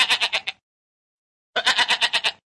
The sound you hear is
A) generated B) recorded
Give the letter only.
B